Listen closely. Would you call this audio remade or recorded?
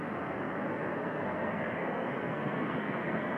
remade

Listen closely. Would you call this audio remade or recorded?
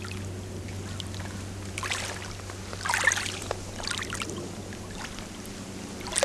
recorded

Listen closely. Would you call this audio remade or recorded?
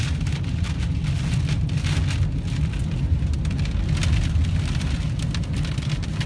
recorded